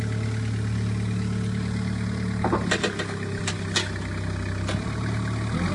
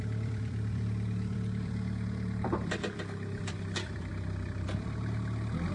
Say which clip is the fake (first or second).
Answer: second